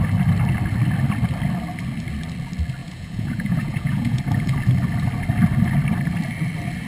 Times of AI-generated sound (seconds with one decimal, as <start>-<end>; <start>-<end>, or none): 2.8-4.2